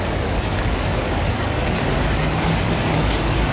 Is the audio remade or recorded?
remade